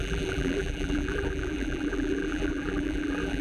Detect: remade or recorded remade